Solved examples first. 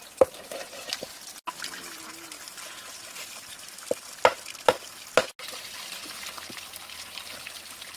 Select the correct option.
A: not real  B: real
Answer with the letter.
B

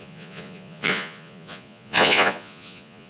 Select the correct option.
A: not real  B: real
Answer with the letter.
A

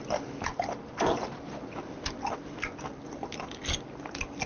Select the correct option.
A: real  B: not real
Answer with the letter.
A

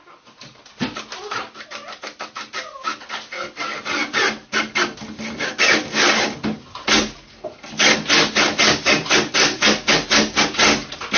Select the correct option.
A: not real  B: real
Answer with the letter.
B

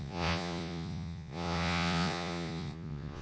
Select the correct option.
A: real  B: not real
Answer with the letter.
B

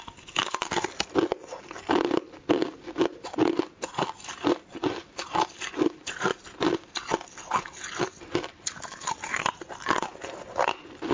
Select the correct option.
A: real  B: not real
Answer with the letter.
A